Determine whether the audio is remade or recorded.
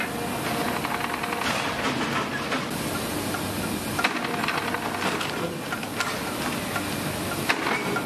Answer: recorded